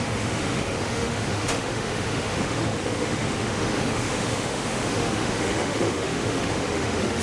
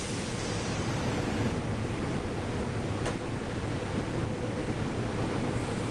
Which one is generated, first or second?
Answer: first